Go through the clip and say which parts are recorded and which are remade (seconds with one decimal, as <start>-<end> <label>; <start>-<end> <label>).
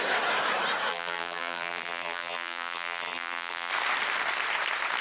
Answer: 0.0-0.9 recorded; 0.9-3.7 remade; 3.7-5.0 recorded